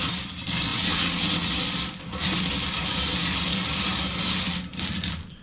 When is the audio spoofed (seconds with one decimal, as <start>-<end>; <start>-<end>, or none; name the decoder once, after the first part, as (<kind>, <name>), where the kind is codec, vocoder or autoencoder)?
0.7-1.5 (vocoder, WaveNeXt)

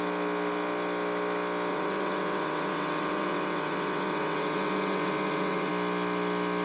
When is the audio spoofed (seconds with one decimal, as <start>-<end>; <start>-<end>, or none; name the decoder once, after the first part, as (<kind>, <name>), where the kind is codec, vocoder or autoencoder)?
1.7-5.7 (vocoder, WaveNeXt)

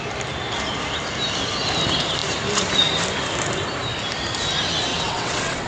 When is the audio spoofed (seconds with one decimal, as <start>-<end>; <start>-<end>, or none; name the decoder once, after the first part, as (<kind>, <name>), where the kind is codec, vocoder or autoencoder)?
4.9-5.7 (vocoder, WaveNeXt)

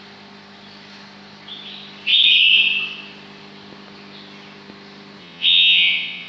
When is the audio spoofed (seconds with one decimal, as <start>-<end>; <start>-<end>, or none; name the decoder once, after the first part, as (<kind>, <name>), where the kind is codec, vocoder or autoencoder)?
5.2-6.3 (vocoder, WaveNeXt)

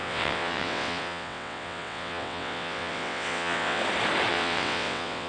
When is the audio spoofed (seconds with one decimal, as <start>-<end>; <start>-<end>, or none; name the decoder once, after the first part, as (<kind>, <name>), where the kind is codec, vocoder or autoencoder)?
0.0-3.8 (vocoder, WaveNeXt); 4.3-5.3

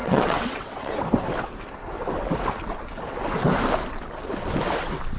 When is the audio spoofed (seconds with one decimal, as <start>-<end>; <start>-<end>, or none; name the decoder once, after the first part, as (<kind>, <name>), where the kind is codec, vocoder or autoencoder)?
0.0-0.9 (vocoder, WaveNeXt)

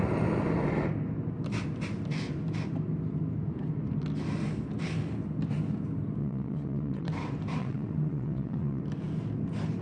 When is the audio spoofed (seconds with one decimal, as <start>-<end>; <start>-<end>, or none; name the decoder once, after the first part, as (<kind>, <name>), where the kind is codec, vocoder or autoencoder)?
6.2-7.1 (vocoder, WaveNeXt); 7.6-8.8